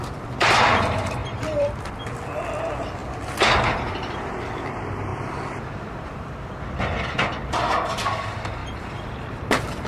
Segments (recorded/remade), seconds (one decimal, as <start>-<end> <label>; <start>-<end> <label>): 0.0-3.0 remade; 3.0-3.9 recorded; 3.9-9.9 remade